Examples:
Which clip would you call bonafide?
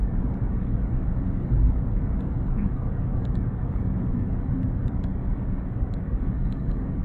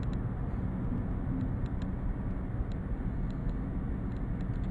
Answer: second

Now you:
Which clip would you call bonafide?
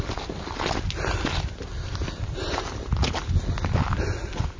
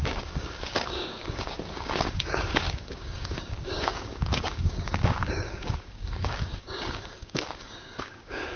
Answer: first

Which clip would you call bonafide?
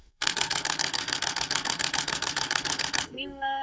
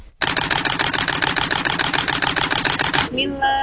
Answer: second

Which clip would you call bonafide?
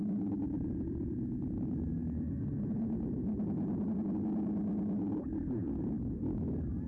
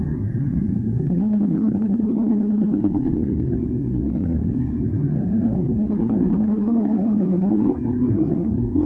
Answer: first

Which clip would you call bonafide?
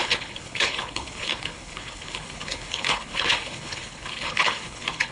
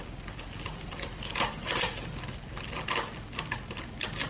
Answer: second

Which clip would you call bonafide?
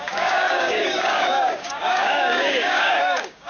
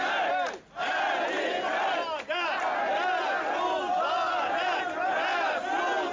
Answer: second